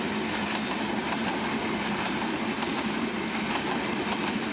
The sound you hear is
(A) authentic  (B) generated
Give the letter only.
A